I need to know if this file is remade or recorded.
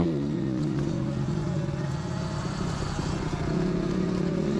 remade